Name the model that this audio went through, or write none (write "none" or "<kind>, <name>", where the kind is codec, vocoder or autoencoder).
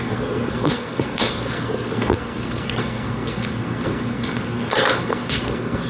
codec, SNAC